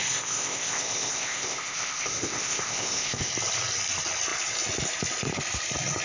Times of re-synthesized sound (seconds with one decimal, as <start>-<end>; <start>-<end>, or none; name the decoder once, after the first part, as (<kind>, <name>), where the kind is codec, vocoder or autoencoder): 0.0-3.3 (codec, ZipCodec)